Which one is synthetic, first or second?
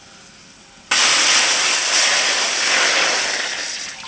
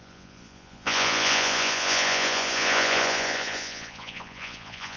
second